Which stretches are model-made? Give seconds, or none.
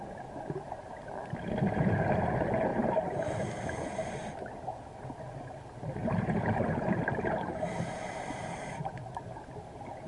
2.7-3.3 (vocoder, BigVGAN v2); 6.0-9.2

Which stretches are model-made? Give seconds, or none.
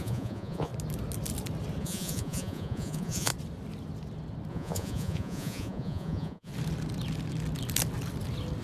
0.0-0.7 (vocoder, Vocos); 1.8-3.3; 4.5-6.5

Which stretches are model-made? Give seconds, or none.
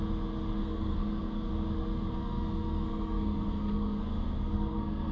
0.6-1.5 (codec, SNAC); 2.2-5.1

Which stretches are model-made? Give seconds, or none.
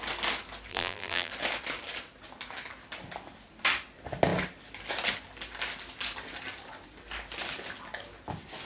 0.7-1.3 (vocoder, BigVGAN v2)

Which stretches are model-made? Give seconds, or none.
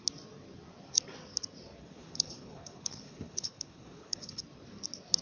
1.8-4.4 (codec, HILCodec)